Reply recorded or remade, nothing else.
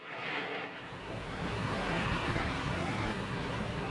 remade